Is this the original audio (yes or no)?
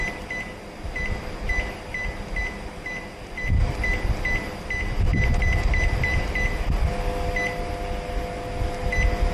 yes